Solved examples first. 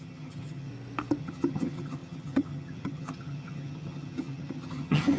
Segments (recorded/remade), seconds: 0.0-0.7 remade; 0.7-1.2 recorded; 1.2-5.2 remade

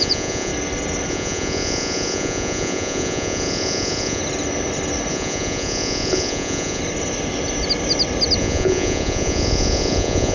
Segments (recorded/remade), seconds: 0.0-0.5 remade; 0.5-1.1 recorded; 1.1-4.2 remade; 4.2-5.1 recorded; 5.1-6.8 remade; 6.8-8.4 recorded; 8.4-10.3 remade

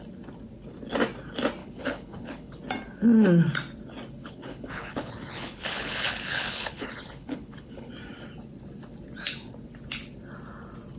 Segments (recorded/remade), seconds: 0.0-1.6 recorded; 1.6-2.6 remade; 2.6-4.2 recorded; 4.2-7.9 remade; 7.9-11.0 recorded

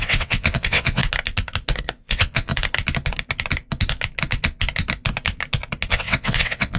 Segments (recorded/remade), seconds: 0.0-1.0 remade; 1.0-2.0 recorded; 2.0-2.5 remade; 2.5-5.9 recorded; 5.9-6.8 remade

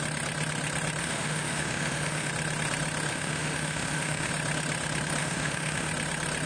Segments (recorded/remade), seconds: 0.0-1.0 recorded; 1.0-2.3 remade; 2.3-3.1 recorded; 3.1-4.3 remade; 4.3-5.2 recorded; 5.2-5.9 remade; 5.9-6.5 recorded